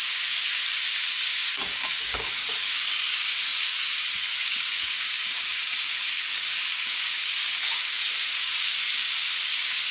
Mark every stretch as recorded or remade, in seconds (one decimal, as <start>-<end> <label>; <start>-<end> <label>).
0.0-0.6 remade; 0.6-1.1 recorded; 1.1-9.9 remade